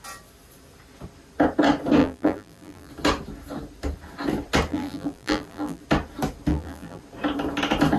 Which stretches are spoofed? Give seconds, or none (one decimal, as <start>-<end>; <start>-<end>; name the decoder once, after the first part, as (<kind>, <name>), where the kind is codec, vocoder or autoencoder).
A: 2.0-2.9 (vocoder, BigVGAN v2); 4.7-5.8; 6.5-7.0